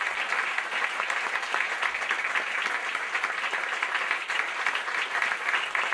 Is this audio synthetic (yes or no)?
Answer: no